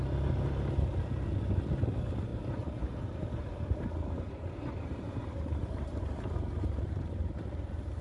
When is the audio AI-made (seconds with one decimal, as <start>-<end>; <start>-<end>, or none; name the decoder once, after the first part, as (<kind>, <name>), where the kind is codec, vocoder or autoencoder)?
2.3-7.1 (vocoder, BigVGAN v2)